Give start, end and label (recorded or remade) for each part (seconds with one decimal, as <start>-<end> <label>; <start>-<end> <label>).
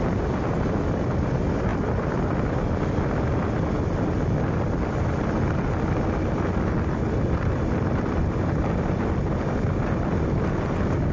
0.0-11.1 recorded